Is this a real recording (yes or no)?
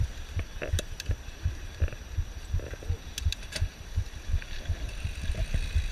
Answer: yes